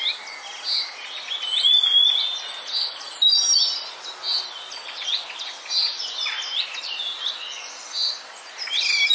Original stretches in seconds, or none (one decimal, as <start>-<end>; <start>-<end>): 0.0-9.1